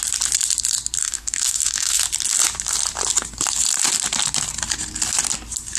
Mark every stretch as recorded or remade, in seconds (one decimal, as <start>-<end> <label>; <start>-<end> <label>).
0.0-1.0 recorded; 1.0-2.0 remade; 2.0-5.8 recorded